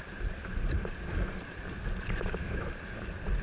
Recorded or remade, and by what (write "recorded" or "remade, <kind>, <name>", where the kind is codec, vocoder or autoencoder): recorded